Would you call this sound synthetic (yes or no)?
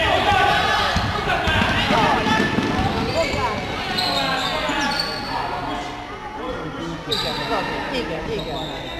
no